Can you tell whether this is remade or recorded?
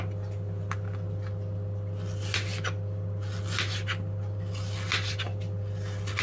recorded